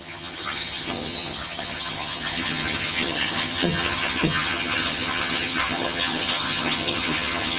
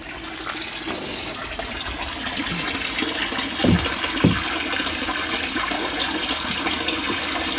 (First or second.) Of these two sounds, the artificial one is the first